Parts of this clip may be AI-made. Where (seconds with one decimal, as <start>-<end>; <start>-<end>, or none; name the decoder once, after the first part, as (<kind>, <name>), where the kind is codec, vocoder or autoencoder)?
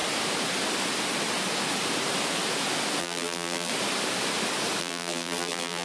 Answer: 3.0-3.7 (vocoder, BigVGAN v2); 4.8-5.8